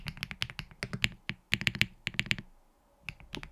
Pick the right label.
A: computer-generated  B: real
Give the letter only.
B